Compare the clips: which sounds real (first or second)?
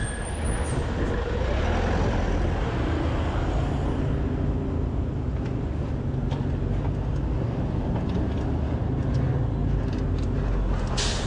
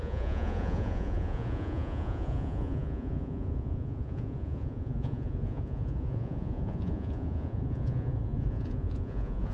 first